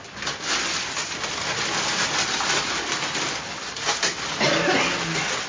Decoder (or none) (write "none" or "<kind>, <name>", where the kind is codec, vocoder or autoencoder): none